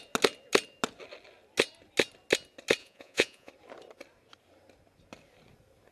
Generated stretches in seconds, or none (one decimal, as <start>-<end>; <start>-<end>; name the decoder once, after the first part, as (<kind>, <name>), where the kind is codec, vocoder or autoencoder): 2.8-3.5 (vocoder, Vocos)